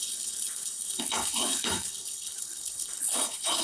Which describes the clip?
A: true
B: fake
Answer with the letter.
B